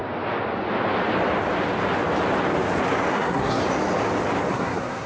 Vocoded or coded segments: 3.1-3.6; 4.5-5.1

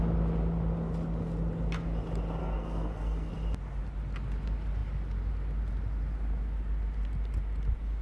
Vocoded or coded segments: 2.4-3.3

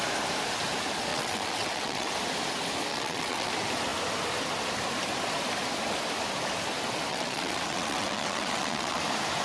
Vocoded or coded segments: 1.1-2.1; 2.9-3.5; 7.1-9.0

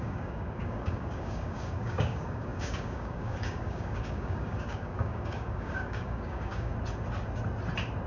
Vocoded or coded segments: 0.0-6.7

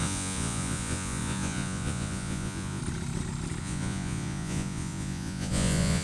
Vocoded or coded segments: 0.0-2.8; 3.6-6.0

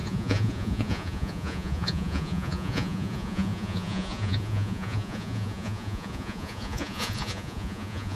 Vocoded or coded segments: 0.0-8.1

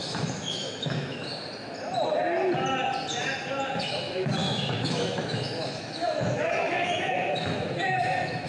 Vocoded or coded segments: 0.0-1.3; 3.8-8.5